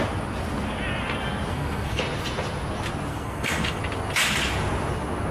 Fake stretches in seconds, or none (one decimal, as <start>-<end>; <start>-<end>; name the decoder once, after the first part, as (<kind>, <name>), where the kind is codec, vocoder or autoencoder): 1.5-2.0 (codec, SNAC); 3.1-3.8